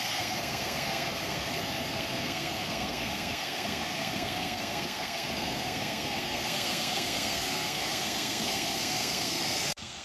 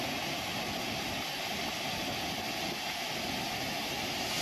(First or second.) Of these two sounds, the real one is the second